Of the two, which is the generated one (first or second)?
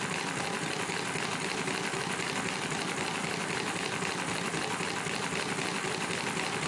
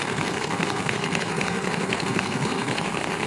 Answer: second